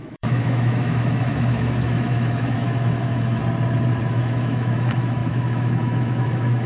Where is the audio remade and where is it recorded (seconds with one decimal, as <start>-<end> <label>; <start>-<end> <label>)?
0.0-3.4 remade; 3.4-4.1 recorded; 4.1-6.7 remade